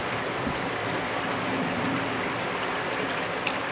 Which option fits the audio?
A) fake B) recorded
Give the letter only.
B